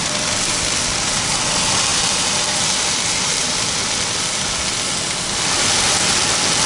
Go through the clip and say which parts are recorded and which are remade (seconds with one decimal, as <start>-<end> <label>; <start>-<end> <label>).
0.0-6.7 recorded